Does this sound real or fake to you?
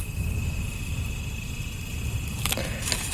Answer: real